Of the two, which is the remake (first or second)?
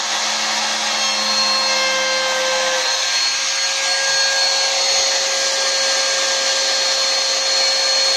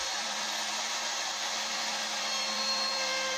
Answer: second